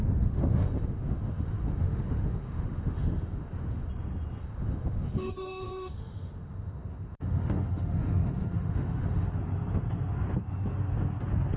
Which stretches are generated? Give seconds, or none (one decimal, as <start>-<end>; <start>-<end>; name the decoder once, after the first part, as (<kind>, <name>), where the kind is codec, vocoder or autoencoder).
0.0-3.9 (autoencoder, DAC-VAE); 4.4-9.3